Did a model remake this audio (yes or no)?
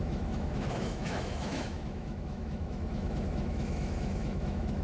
yes